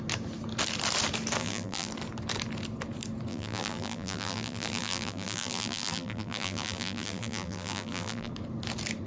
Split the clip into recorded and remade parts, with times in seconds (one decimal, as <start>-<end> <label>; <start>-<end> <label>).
0.0-1.4 recorded; 1.4-1.9 remade; 1.9-3.3 recorded; 3.3-8.3 remade; 8.3-9.1 recorded